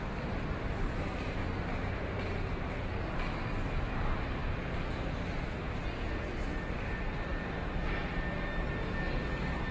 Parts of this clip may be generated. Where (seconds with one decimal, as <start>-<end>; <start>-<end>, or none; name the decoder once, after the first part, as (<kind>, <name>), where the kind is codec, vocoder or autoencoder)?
none